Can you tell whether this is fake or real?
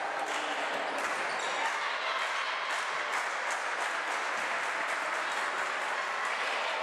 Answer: real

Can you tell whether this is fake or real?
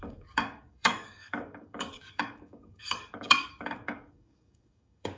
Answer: fake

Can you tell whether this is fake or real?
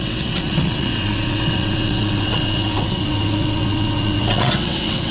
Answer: fake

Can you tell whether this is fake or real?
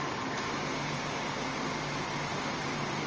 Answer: real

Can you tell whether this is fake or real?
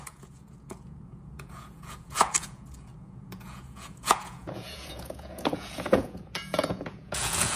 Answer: fake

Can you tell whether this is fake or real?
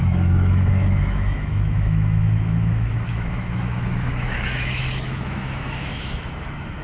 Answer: fake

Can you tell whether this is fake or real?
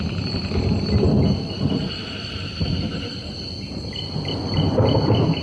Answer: real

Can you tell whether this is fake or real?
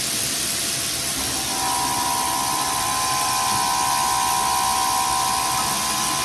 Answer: real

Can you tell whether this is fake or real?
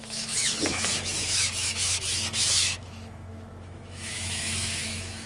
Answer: fake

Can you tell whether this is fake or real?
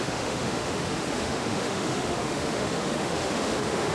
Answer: fake